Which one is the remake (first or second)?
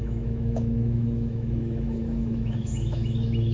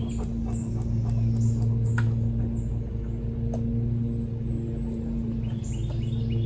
first